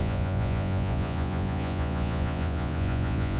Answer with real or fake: fake